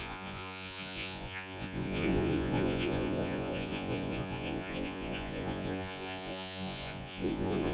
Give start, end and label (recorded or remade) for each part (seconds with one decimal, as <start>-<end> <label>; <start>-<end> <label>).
0.0-7.7 remade